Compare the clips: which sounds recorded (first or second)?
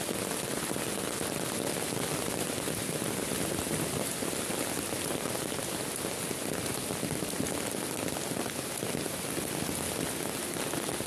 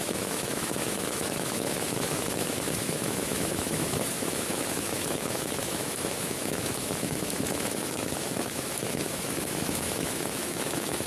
first